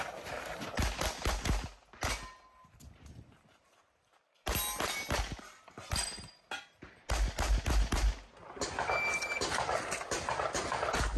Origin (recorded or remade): recorded